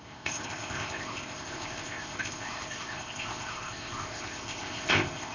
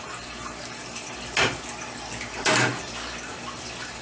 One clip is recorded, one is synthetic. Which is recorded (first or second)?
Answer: second